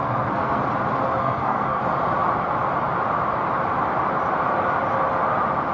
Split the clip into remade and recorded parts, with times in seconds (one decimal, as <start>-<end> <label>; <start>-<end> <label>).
0.0-0.6 remade; 0.6-1.2 recorded; 1.2-1.8 remade; 1.8-5.7 recorded